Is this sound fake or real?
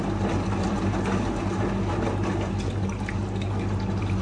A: real